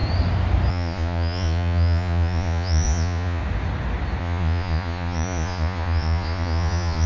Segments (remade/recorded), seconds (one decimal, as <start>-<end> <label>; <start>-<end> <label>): 0.0-0.7 recorded; 0.7-3.4 remade; 3.4-4.2 recorded; 4.2-7.1 remade